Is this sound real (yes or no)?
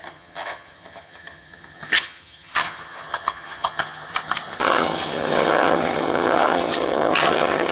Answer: no